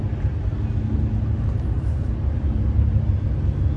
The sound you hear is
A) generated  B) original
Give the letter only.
B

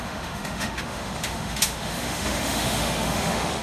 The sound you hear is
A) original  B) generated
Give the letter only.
B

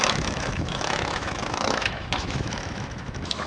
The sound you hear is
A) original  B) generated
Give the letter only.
B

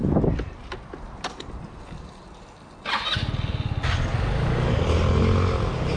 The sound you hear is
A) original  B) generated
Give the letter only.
A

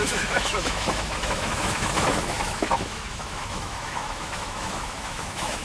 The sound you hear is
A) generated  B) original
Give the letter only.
A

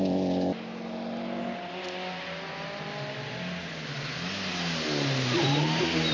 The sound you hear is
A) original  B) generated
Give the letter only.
A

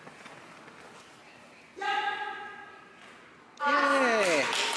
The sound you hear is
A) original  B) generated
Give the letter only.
A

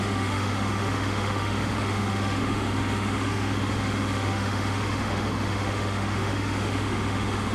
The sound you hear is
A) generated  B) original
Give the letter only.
A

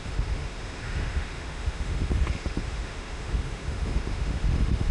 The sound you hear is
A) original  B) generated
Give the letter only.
B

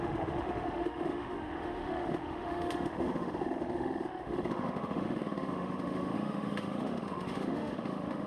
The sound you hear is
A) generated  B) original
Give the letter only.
A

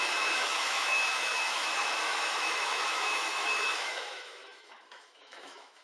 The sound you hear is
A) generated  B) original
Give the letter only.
A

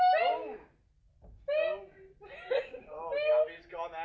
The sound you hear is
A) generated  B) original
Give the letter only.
B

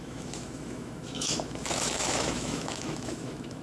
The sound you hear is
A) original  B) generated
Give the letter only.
B